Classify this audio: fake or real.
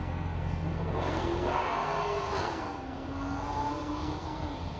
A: fake